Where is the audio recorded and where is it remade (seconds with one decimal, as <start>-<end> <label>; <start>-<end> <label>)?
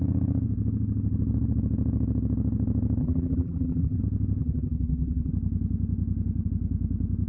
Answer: 0.0-3.0 recorded; 3.0-4.0 remade; 4.0-4.4 recorded; 4.4-5.3 remade; 5.3-7.3 recorded